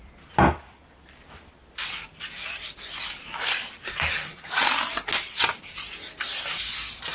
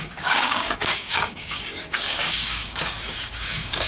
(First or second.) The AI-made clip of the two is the second